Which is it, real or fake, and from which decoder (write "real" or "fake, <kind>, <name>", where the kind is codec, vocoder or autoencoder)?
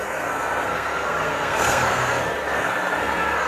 fake, codec, SNAC